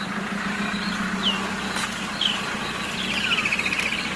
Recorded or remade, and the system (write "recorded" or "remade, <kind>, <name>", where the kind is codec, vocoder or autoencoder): recorded